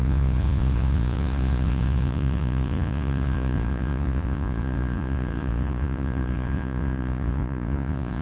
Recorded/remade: remade